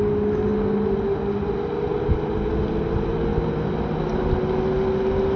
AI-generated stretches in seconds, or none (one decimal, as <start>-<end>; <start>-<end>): none